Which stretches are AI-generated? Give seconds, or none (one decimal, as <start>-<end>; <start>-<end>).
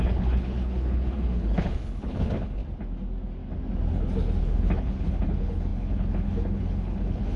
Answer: 0.0-2.6; 4.4-7.4